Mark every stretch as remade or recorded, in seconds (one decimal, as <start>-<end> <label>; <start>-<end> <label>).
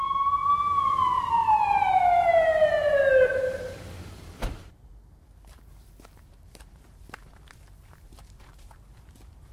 0.0-0.4 remade; 0.4-1.2 recorded; 1.2-9.5 remade